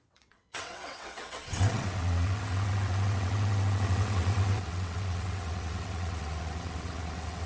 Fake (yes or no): yes